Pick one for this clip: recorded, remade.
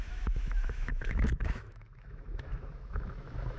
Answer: remade